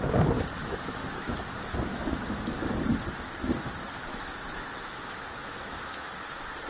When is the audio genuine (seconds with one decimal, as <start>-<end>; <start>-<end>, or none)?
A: 0.0-0.6; 1.4-1.9; 2.6-4.1; 6.1-6.7